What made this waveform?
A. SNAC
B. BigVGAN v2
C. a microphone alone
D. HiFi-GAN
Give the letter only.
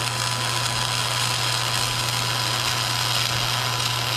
C